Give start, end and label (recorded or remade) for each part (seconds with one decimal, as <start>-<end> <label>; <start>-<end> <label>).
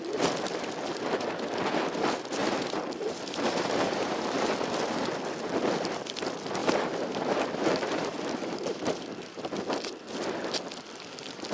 0.0-2.4 recorded; 2.4-4.7 remade; 4.7-6.6 recorded; 6.6-9.4 remade; 9.4-11.5 recorded